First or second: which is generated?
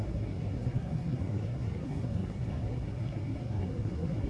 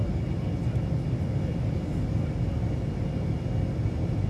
first